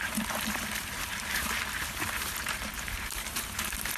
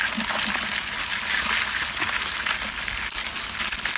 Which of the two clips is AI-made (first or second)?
first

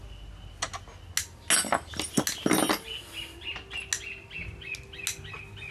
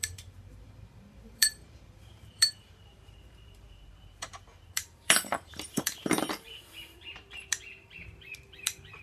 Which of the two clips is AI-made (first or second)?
second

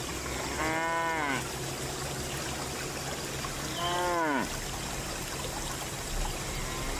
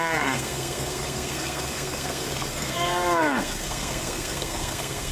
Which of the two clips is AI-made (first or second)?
second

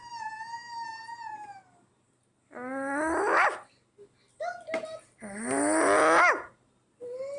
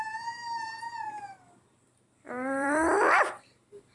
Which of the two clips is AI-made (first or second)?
second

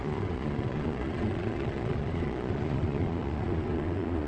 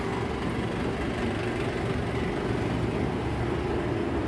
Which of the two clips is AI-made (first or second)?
first